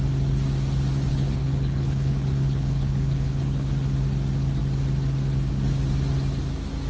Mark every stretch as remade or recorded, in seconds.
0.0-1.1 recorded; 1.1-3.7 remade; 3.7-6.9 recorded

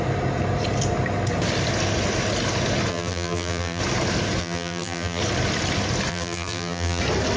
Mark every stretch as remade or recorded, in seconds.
0.0-2.9 recorded; 2.9-3.8 remade; 3.8-4.4 recorded; 4.4-5.2 remade; 5.2-6.1 recorded; 6.1-7.0 remade; 7.0-7.4 recorded

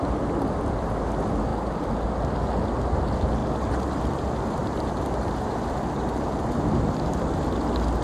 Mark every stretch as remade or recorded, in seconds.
0.0-1.5 recorded; 1.5-2.1 remade; 2.1-4.6 recorded; 4.6-7.4 remade; 7.4-8.0 recorded

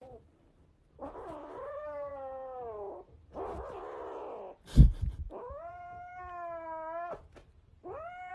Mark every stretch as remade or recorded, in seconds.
0.0-2.1 remade; 2.1-5.3 recorded; 5.3-6.1 remade; 6.1-8.3 recorded